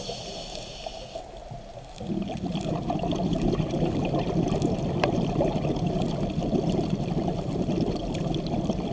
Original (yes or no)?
yes